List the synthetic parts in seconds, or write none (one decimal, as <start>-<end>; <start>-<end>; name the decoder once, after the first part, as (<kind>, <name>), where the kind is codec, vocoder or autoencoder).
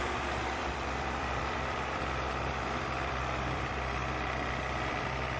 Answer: 0.0-5.4 (vocoder, BigVGAN v2)